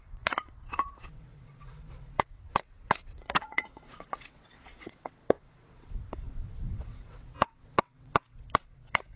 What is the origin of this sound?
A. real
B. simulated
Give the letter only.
B